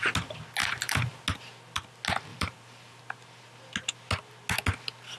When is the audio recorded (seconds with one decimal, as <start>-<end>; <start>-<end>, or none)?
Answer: 0.0-0.6; 1.2-2.3; 3.0-5.2